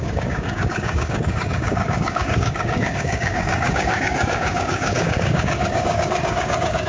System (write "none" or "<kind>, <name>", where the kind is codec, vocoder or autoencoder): codec, DAC